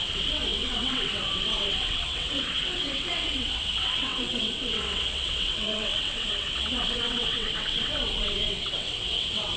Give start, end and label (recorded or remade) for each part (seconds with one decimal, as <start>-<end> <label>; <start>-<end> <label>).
0.0-9.6 remade